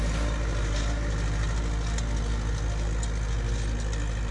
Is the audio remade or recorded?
recorded